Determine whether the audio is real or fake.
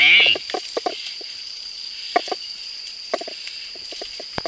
real